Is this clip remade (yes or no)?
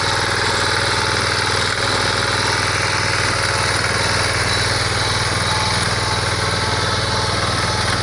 no